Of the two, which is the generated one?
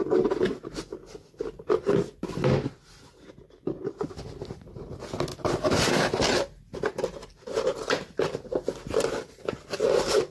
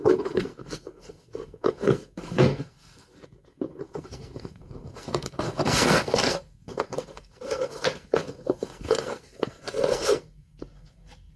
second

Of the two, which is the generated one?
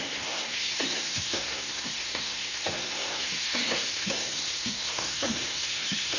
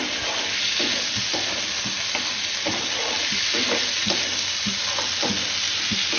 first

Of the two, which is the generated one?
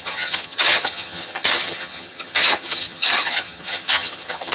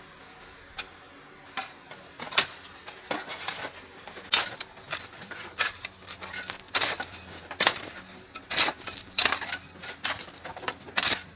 first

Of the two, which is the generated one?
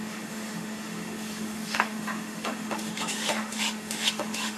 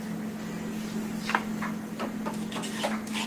first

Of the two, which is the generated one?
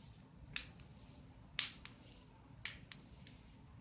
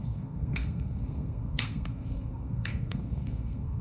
second